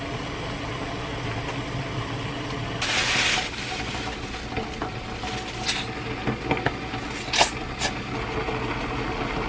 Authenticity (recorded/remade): recorded